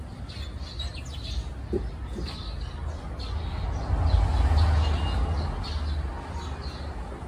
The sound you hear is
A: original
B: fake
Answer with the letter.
A